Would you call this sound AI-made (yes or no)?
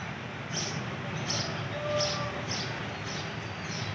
no